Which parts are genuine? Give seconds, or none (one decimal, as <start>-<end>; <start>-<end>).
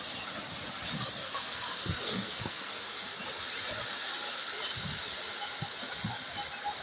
0.0-1.2; 3.2-6.8